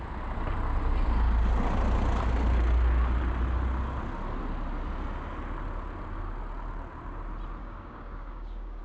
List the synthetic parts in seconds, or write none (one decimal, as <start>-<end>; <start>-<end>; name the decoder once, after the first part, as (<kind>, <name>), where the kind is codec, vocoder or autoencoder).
7.6-8.8 (codec, DAC)